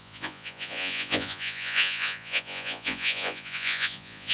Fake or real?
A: fake